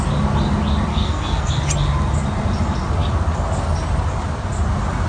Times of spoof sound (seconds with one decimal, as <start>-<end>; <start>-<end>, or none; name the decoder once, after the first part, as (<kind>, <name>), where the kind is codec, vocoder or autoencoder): 0.9-1.5 (codec, SNAC)